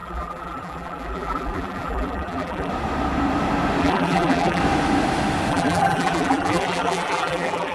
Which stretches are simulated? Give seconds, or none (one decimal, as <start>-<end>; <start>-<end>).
0.0-2.7; 3.8-4.6; 5.5-7.7